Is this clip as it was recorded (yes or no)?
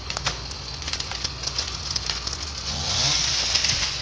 no